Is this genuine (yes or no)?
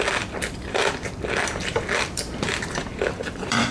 no